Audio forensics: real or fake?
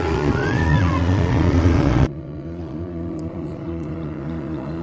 fake